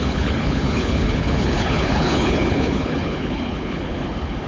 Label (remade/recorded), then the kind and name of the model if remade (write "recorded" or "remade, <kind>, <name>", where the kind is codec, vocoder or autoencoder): remade, codec, HILCodec